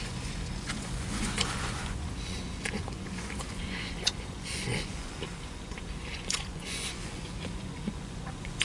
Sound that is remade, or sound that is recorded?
remade